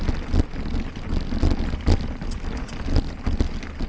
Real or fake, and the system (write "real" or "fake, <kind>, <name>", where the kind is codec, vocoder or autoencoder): real